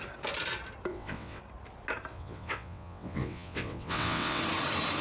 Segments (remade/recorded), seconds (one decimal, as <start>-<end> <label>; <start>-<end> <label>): 0.0-0.9 recorded; 0.9-1.4 remade; 1.4-2.1 recorded; 2.1-4.4 remade; 4.4-5.0 recorded